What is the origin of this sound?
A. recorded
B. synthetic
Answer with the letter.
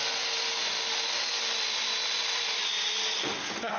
A